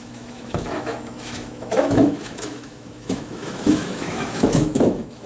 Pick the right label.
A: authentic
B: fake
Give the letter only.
B